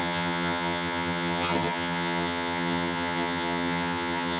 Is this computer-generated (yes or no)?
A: yes